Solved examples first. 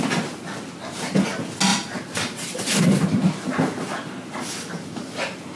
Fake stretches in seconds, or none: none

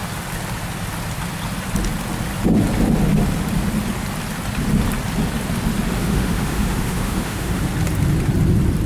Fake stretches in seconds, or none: 6.0-7.7

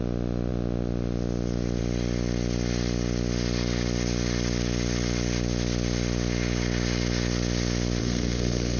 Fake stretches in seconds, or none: 8.0-8.8